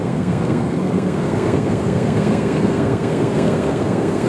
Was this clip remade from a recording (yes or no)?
yes